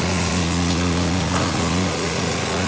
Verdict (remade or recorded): remade